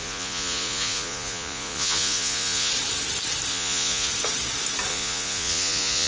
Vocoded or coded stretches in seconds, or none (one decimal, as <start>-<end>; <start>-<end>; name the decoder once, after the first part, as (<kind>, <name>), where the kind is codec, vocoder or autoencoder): 0.0-2.7 (vocoder, Vocos); 3.5-4.1; 4.9-6.1

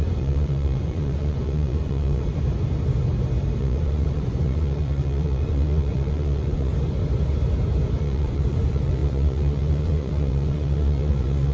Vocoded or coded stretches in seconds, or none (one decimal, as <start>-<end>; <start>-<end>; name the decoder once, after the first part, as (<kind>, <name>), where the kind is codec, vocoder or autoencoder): 0.0-2.3 (vocoder, Vocos); 3.6-6.7; 8.0-11.5

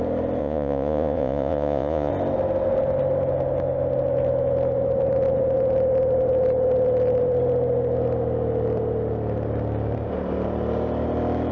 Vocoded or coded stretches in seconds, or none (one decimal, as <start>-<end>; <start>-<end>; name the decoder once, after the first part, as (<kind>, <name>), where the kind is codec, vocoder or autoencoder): 0.4-2.1 (vocoder, Vocos)

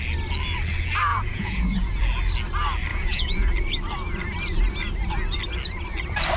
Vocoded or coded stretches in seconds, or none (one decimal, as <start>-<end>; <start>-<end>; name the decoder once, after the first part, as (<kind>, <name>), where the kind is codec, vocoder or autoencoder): 1.1-2.0 (vocoder, Vocos); 2.9-3.5

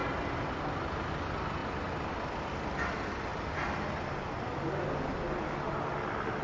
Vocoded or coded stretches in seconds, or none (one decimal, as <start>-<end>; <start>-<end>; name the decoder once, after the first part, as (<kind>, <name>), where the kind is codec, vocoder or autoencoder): none

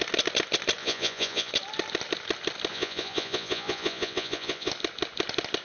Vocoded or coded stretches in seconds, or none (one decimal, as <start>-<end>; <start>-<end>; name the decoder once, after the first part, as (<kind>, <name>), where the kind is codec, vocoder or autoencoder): 0.8-1.5 (vocoder, Vocos); 2.7-4.7

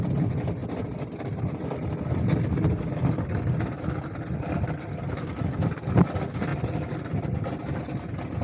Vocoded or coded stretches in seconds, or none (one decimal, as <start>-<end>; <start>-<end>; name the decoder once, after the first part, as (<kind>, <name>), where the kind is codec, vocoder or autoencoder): none

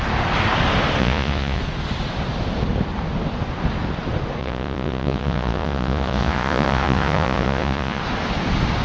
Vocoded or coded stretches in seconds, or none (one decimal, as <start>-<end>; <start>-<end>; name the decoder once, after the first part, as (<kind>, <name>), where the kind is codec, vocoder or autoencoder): 1.0-1.6 (vocoder, Vocos); 4.4-8.0